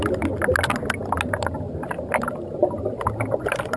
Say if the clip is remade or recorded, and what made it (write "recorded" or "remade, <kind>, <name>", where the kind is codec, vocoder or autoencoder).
recorded